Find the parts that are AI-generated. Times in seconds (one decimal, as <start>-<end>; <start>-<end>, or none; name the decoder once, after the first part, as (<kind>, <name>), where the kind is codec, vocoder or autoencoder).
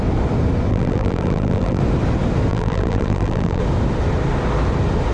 0.7-1.8 (vocoder, BigVGAN v2); 2.5-3.6